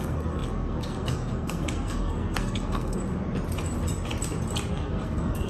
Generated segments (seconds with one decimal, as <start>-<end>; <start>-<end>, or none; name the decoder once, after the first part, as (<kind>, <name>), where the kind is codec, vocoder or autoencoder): 0.0-3.0 (codec, SNAC); 4.7-5.5